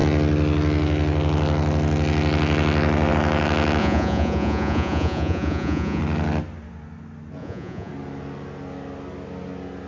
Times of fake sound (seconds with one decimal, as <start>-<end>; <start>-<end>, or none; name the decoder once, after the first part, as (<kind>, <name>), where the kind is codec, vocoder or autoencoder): 3.8-6.0 (vocoder, Vocos); 7.4-7.9